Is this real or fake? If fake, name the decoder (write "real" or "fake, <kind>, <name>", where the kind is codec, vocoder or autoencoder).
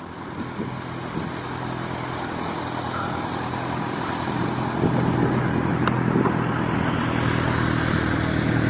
real